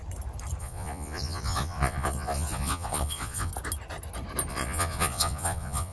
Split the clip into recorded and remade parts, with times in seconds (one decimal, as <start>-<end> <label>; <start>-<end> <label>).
0.0-0.6 recorded; 0.6-3.5 remade; 3.5-4.5 recorded; 4.5-5.9 remade